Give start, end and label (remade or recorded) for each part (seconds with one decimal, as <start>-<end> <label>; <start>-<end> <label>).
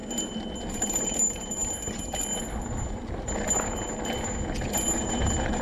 0.0-0.8 recorded; 0.8-1.6 remade; 1.6-5.0 recorded; 5.0-5.6 remade